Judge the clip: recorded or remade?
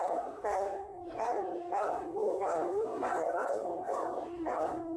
remade